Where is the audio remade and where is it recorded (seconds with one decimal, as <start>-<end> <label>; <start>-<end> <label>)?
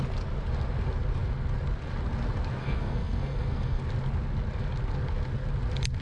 0.0-2.6 recorded; 2.6-3.8 remade; 3.8-6.0 recorded